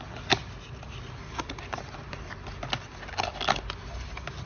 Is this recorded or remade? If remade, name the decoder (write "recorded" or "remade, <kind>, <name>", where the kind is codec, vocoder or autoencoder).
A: recorded